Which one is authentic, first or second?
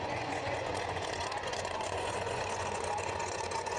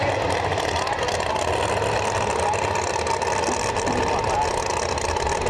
second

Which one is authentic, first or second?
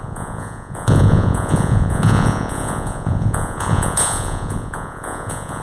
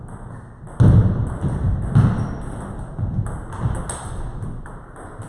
second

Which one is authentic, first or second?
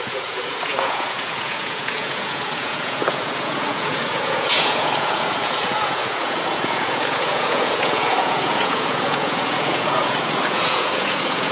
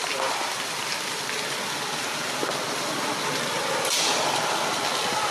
second